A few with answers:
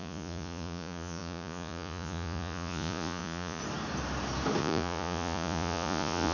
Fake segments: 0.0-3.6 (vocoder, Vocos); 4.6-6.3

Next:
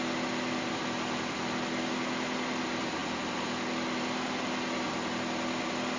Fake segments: none

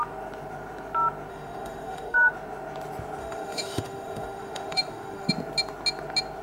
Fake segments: 1.3-2.3 (autoencoder, DAC-VAE); 3.2-5.3

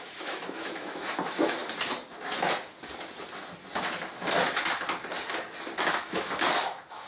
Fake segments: 0.0-1.6 (autoencoder, DAC-VAE); 5.9-7.1

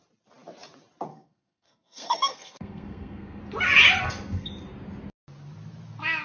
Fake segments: 1.1-3.4 (codec, SNAC); 4.0-4.5

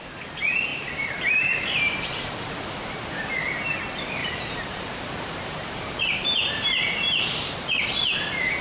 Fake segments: 0.7-2.3 (vocoder, BigVGAN v2); 4.2-7.5